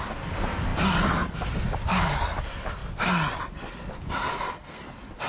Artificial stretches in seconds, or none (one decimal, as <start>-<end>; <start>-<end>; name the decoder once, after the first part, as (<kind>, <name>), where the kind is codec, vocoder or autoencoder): 4.3-4.8 (codec, SNAC)